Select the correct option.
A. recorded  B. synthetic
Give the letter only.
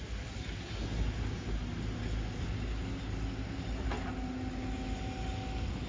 A